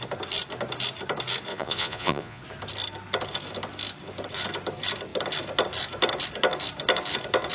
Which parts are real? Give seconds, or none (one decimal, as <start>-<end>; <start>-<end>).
0.0-1.5; 2.4-7.5